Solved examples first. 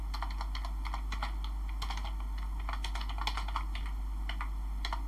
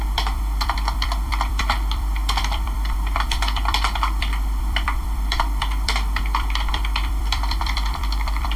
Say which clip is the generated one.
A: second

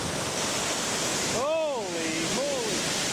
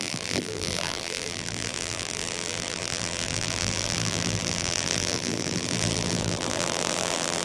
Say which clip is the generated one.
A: second